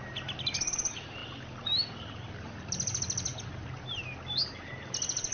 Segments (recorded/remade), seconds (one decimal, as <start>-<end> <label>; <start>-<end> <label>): 0.0-5.3 recorded